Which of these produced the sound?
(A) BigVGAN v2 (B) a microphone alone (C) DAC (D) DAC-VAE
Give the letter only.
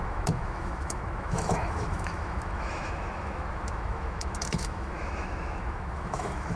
D